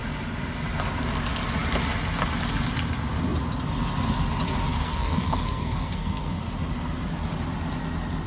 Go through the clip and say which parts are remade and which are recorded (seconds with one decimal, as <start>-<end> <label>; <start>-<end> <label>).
0.0-4.7 recorded; 4.7-6.4 remade; 6.4-8.3 recorded